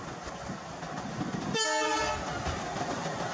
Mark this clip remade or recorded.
recorded